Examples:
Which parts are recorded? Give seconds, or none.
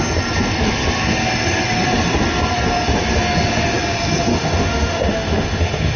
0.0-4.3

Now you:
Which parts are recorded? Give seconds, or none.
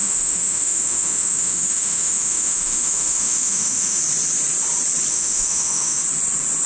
4.0-5.1; 6.0-6.7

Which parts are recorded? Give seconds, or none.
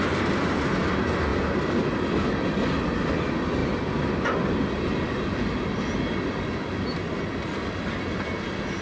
0.0-8.8